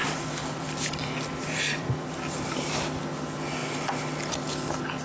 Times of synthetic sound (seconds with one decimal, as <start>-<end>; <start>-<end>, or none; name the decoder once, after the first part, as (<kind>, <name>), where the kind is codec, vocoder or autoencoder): 0.0-3.0 (vocoder, BigVGAN v2)